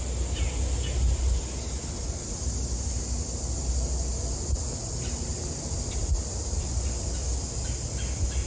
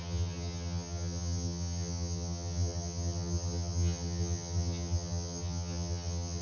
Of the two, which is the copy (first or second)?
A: second